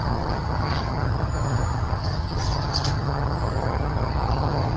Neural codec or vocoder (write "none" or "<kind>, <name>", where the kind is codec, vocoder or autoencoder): vocoder, HiFi-GAN